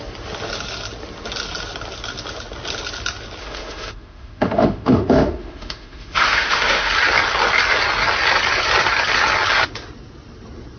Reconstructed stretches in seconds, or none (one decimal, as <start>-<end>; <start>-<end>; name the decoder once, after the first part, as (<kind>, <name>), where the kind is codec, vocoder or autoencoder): 3.4-6.9 (autoencoder, DAC-VAE)